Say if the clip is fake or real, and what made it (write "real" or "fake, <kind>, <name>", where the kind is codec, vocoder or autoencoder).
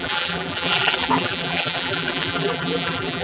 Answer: fake, vocoder, BigVGAN v2